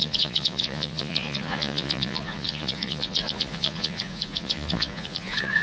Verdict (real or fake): fake